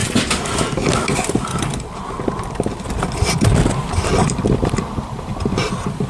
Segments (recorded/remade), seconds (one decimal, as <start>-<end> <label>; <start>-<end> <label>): 0.0-6.1 recorded